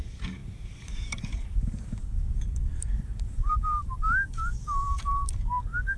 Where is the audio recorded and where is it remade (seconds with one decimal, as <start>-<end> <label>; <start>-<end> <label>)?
0.0-6.0 remade